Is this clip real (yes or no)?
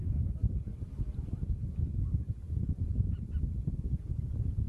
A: no